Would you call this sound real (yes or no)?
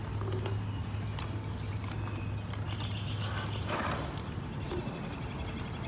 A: yes